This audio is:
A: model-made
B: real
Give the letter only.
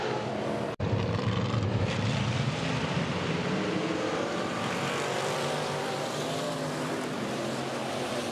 A